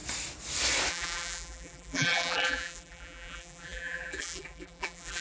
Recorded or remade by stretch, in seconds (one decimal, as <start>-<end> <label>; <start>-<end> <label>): 0.0-0.9 recorded; 0.9-5.2 remade

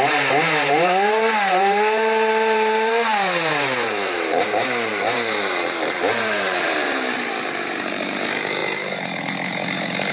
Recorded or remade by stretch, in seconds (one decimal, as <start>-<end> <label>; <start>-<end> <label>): 0.0-10.1 remade

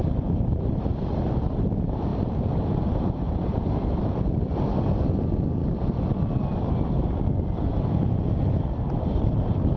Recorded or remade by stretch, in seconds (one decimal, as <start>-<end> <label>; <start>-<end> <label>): 0.0-0.8 remade; 0.8-2.1 recorded; 2.1-4.0 remade; 4.0-9.8 recorded

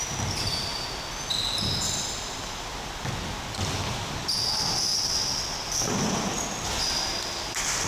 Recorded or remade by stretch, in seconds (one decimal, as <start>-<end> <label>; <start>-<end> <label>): 0.0-7.9 recorded